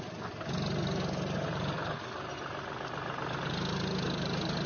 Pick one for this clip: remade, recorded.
recorded